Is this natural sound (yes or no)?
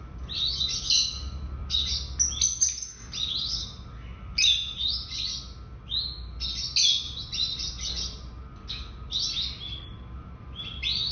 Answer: yes